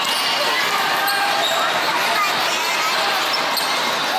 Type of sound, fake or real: real